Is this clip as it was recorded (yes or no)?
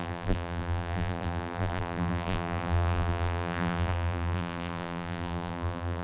no